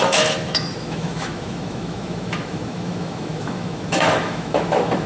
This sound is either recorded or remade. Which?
remade